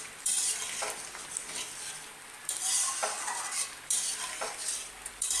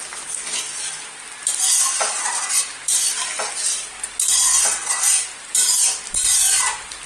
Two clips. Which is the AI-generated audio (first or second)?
first